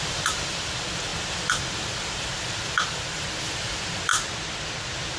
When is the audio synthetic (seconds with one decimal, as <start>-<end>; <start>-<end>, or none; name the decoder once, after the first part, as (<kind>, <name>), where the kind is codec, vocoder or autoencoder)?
0.0-4.1 (vocoder, BigVGAN v2)